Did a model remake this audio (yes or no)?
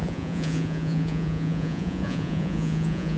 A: yes